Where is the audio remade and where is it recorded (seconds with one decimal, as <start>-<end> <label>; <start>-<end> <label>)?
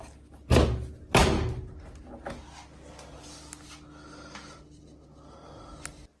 0.0-6.2 recorded